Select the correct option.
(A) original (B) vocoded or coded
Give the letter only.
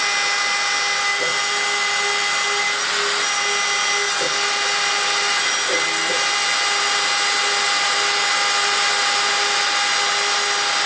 A